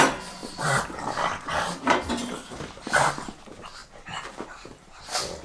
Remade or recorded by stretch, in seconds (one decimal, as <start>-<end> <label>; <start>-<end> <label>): 0.0-3.8 recorded; 3.8-4.9 remade; 4.9-5.4 recorded